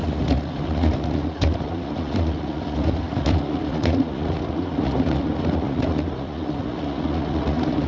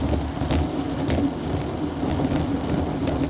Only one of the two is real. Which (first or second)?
second